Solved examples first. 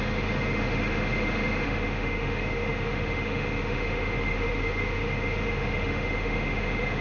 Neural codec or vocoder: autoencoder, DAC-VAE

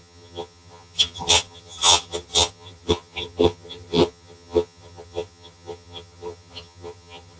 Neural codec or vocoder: vocoder, HiFi-GAN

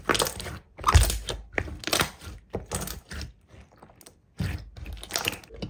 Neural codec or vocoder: none